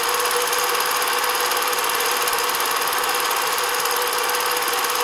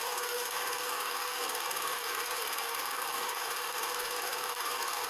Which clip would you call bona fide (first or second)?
first